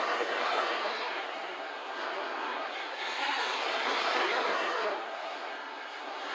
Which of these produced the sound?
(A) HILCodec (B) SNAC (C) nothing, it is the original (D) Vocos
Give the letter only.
B